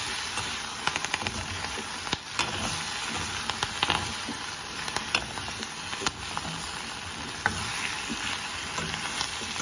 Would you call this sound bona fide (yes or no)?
yes